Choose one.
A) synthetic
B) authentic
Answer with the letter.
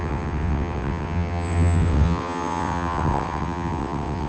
A